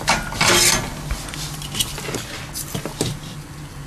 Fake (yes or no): no